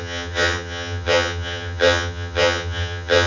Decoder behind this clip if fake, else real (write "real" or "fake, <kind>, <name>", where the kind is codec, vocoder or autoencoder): fake, vocoder, HiFi-GAN